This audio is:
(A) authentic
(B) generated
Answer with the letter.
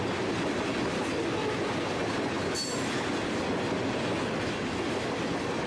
A